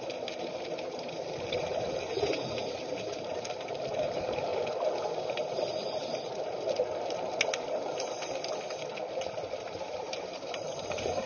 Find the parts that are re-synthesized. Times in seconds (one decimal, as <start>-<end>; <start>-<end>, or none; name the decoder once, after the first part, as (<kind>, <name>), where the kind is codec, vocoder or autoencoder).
0.0-4.5 (vocoder, BigVGAN v2); 9.6-11.3